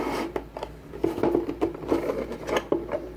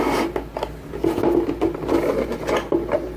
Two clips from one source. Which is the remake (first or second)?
first